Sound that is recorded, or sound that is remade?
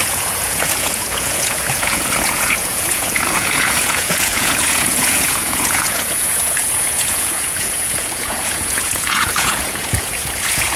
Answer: remade